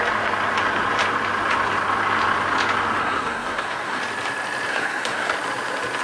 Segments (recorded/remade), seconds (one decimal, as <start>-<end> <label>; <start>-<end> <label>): 0.0-3.0 recorded; 3.0-4.0 remade; 4.0-4.7 recorded; 4.7-5.3 remade; 5.3-6.0 recorded